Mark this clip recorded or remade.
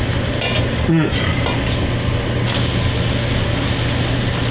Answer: recorded